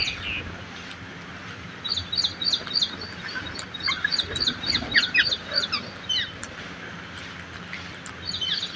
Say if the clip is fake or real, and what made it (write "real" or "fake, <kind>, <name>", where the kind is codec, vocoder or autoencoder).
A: real